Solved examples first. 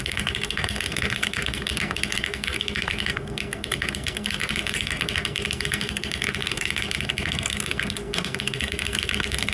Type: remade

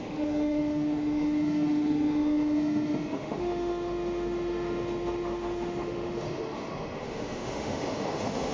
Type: remade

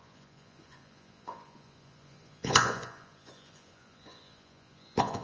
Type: remade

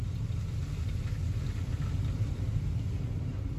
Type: recorded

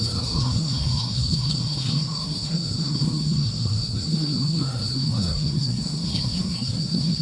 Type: remade